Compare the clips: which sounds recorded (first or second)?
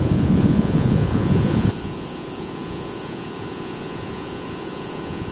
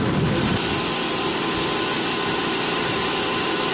second